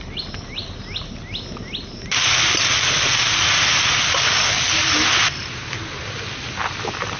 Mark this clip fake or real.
real